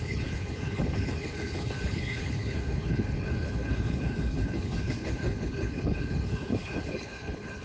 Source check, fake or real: fake